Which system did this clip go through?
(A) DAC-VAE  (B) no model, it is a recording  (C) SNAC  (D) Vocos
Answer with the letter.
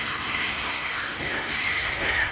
C